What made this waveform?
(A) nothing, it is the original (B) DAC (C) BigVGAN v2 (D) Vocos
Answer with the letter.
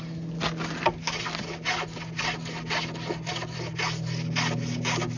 A